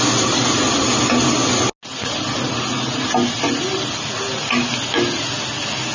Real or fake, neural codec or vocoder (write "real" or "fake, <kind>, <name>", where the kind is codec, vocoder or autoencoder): real